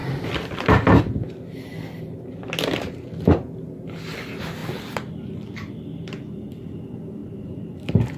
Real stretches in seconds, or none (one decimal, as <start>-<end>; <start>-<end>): 1.0-7.2